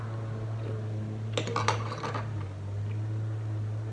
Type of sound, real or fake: real